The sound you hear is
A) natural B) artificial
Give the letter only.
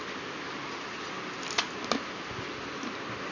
A